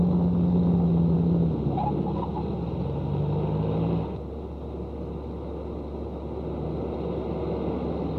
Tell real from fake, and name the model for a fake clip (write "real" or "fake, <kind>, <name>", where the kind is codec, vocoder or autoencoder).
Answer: real